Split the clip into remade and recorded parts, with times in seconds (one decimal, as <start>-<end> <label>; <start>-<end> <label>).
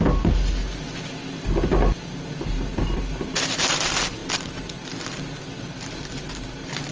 0.0-6.9 recorded